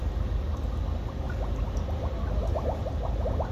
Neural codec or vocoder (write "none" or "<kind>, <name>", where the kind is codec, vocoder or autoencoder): none